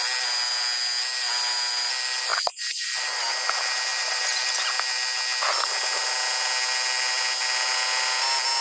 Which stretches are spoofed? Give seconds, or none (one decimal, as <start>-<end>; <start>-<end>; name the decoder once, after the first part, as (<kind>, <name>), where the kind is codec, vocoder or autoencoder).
2.3-3.5 (vocoder, BigVGAN v2); 3.9-4.4